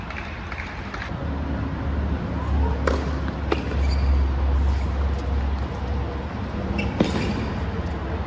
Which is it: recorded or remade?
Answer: recorded